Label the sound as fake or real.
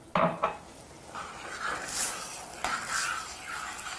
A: real